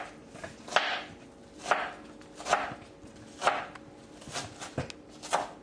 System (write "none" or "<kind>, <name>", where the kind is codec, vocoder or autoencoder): none